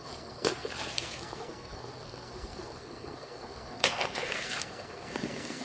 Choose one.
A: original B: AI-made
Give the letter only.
B